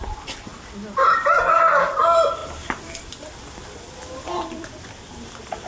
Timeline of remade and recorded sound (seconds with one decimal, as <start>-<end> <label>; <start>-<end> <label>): 0.0-0.5 recorded; 0.5-1.4 remade; 1.4-5.7 recorded